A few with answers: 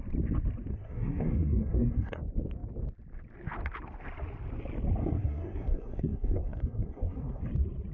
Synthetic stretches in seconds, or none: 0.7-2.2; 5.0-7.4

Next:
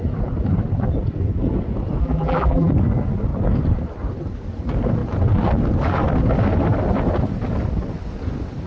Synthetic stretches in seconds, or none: 2.0-2.7